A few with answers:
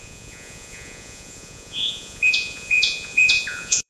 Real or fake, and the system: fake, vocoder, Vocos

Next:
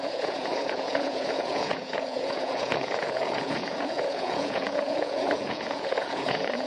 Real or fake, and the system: fake, vocoder, Vocos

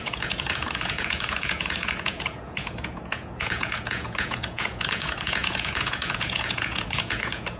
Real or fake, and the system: fake, vocoder, Vocos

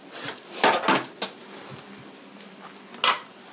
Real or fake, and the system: real